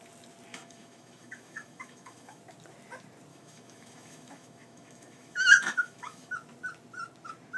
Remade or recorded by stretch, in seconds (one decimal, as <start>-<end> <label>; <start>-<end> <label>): 0.0-0.5 recorded; 0.5-2.4 remade; 2.4-3.3 recorded; 3.3-6.3 remade; 6.3-7.6 recorded